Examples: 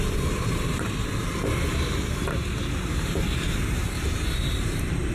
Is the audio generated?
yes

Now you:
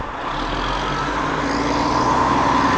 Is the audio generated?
no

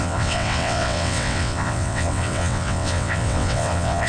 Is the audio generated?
yes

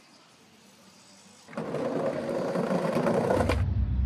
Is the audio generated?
no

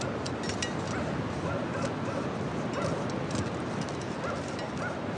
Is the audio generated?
no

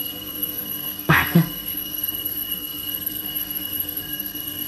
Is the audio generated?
yes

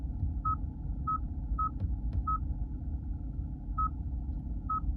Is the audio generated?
no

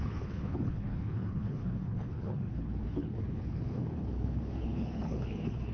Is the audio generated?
yes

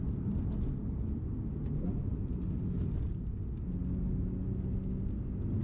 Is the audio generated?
no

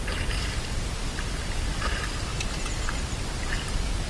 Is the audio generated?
no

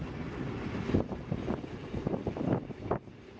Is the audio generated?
no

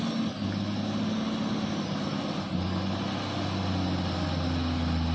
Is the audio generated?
no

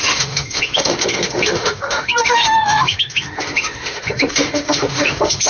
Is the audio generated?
yes